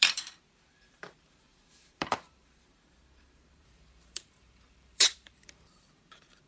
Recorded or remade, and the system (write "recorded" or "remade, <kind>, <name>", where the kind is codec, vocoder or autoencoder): remade, vocoder, BigVGAN v2